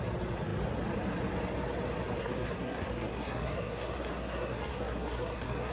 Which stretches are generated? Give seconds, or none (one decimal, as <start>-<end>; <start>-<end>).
2.2-5.7